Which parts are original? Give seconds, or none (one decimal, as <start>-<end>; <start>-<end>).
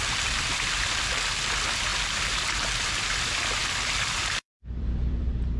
none